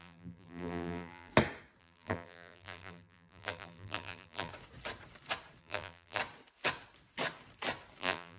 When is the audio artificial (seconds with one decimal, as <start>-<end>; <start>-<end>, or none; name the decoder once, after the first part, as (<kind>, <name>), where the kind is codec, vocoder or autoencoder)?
0.0-1.3 (vocoder, BigVGAN v2); 1.8-4.5; 5.6-6.2; 8.0-8.4